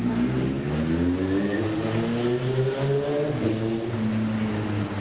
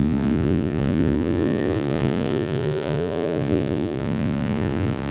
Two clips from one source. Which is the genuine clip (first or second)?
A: first